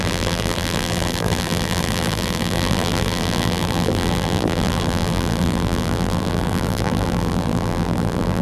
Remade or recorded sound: remade